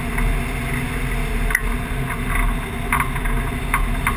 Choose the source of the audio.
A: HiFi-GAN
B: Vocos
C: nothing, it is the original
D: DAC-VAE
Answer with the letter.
C